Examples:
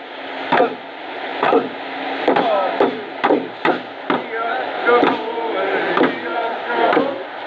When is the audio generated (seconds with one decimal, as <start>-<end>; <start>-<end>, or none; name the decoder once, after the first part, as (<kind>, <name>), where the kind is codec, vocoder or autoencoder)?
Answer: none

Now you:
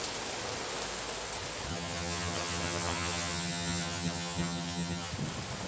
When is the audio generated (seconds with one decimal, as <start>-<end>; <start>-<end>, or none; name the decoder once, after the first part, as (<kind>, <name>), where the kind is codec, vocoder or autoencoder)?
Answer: 1.7-5.1 (vocoder, HiFi-GAN)

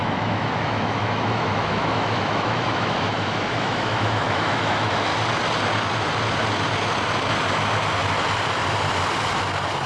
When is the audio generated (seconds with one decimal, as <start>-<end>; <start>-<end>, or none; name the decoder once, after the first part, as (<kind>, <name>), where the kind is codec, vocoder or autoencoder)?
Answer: 0.0-5.1 (autoencoder, DAC-VAE)

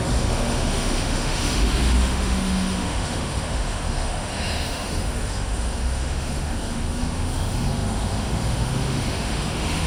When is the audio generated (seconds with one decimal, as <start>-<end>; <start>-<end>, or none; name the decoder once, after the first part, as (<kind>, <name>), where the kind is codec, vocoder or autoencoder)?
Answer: 0.0-9.9 (autoencoder, DAC-VAE)

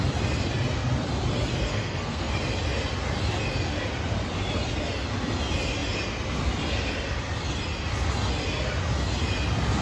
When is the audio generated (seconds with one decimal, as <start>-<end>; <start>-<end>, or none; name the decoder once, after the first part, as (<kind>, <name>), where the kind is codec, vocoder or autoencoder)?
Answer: 1.7-2.3 (codec, SNAC)

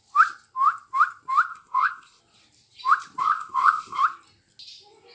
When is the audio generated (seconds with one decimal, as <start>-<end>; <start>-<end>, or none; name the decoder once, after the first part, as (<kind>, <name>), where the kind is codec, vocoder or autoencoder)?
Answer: 1.5-2.2 (codec, ZipCodec); 3.2-4.0

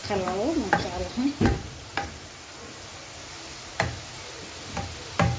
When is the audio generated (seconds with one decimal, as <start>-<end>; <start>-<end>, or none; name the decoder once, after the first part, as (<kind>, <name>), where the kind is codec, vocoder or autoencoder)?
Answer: none

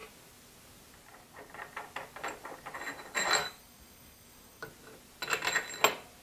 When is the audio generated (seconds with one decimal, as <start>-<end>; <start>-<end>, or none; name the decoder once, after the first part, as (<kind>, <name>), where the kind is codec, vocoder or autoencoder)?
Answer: 3.4-4.7 (codec, DAC)